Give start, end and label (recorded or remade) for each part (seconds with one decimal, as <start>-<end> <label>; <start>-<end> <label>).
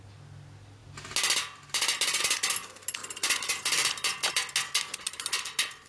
0.0-5.9 recorded